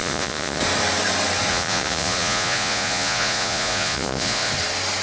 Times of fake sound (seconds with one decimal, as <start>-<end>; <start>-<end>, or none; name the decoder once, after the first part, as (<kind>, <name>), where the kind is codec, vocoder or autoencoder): 0.0-0.6 (vocoder, Vocos); 1.5-4.5